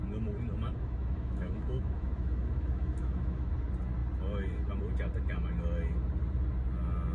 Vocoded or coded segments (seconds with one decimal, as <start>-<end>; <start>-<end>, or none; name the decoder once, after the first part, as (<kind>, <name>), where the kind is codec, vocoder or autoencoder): 0.7-3.5 (autoencoder, DAC-VAE)